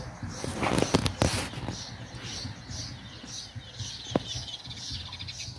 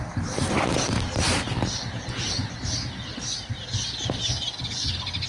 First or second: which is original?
first